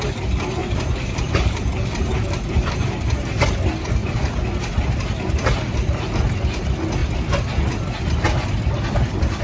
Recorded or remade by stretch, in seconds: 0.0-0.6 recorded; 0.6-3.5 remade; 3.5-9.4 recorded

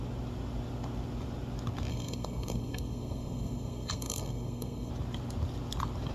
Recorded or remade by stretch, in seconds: 0.0-1.9 recorded; 1.9-4.9 remade; 4.9-6.1 recorded

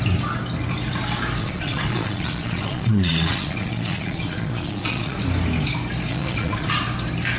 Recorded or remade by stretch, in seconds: 0.0-1.4 recorded; 1.4-5.2 remade; 5.2-6.1 recorded; 6.1-6.7 remade; 6.7-7.4 recorded

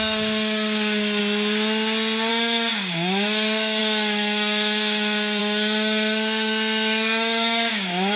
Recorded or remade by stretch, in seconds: 0.0-1.2 remade; 1.2-2.3 recorded; 2.3-8.2 remade

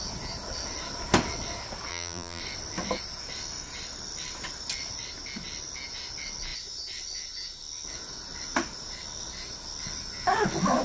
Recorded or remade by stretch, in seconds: 0.0-1.9 recorded; 1.9-2.4 remade; 2.4-10.8 recorded

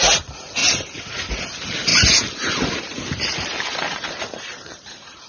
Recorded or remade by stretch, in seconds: 0.0-0.6 recorded; 0.6-1.3 remade; 1.3-1.9 recorded; 1.9-5.3 remade